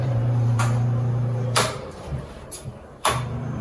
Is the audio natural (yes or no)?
no